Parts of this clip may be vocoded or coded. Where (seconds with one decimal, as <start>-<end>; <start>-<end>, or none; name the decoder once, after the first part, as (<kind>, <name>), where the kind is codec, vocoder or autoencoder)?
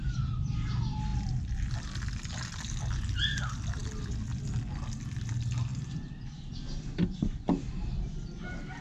none